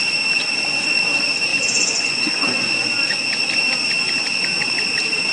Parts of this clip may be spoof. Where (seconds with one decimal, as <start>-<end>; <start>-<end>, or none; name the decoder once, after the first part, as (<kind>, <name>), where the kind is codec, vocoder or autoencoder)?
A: 1.5-2.9 (vocoder, Vocos)